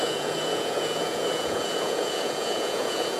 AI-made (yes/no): yes